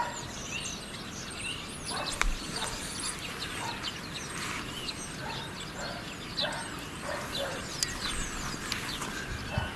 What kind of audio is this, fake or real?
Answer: real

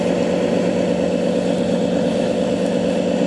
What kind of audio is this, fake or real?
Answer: real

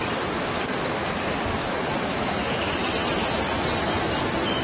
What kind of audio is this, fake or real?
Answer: fake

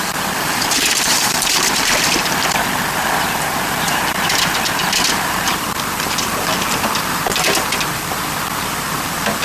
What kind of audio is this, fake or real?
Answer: fake